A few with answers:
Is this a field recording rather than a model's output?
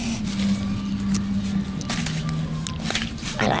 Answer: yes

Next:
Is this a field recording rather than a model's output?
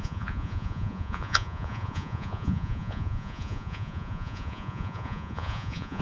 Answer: no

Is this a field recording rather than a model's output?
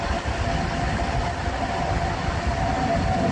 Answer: yes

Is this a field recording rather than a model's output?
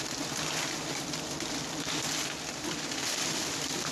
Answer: yes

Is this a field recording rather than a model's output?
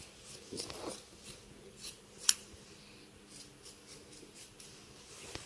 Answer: yes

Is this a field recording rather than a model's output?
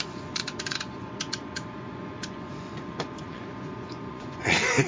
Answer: no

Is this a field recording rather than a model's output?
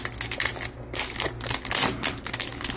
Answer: yes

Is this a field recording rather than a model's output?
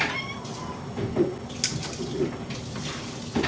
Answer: yes